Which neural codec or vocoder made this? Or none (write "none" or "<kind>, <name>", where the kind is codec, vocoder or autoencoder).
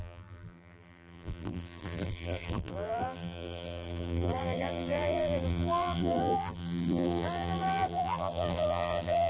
vocoder, BigVGAN v2